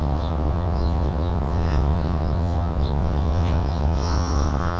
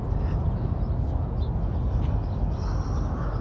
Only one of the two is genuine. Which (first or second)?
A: second